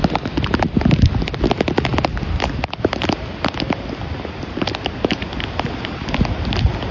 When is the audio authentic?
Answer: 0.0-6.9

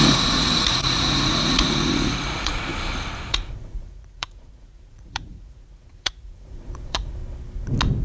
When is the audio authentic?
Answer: 2.7-3.3; 7.2-8.0